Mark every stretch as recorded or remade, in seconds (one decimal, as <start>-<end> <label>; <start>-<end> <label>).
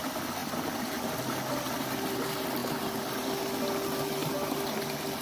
0.0-5.2 recorded